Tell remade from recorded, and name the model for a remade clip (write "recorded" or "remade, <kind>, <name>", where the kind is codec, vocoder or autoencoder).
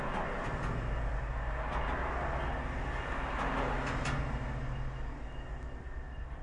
recorded